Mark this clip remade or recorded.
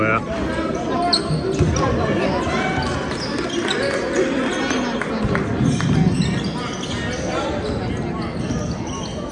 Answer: recorded